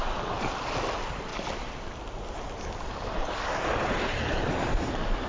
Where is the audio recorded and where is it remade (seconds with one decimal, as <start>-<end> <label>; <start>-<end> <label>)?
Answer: 0.0-5.3 recorded